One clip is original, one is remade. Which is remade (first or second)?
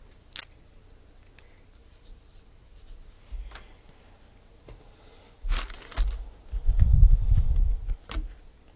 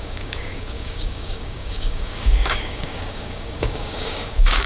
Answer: second